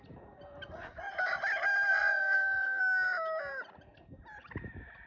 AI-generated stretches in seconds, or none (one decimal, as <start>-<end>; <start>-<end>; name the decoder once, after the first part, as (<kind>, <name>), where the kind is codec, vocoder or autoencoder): 1.9-2.8 (vocoder, WaveNeXt)